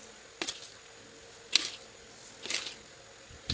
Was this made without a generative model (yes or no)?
yes